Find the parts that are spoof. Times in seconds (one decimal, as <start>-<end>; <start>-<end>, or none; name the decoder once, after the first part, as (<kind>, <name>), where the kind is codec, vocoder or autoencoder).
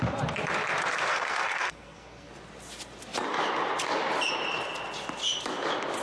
1.1-2.3 (codec, SNAC)